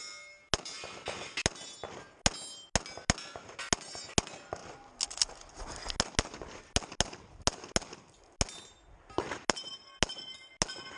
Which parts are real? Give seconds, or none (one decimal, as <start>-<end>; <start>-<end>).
0.0-11.0